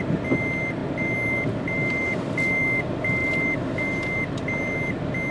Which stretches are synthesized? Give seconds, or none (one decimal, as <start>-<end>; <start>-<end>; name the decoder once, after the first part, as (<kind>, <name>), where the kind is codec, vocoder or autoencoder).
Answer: none